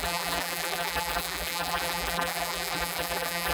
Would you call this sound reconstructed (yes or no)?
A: yes